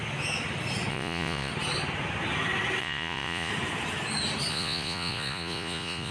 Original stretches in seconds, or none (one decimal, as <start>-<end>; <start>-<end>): 0.0-0.9; 1.5-2.8; 3.5-4.5